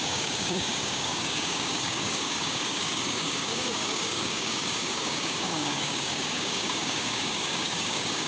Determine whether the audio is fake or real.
fake